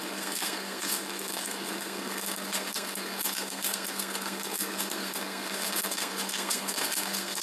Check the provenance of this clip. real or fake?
fake